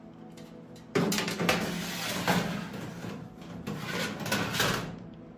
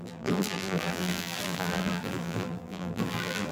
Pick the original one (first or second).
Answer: first